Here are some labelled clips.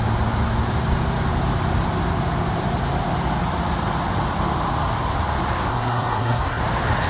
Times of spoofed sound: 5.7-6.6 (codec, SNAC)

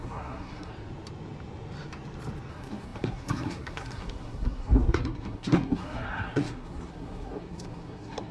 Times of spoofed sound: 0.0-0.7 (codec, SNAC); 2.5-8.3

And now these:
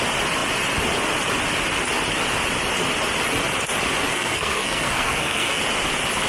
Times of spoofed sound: 4.1-5.6 (codec, SNAC)